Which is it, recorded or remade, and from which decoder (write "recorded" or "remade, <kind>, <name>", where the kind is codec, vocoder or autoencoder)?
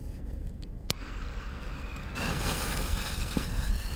remade, codec, SNAC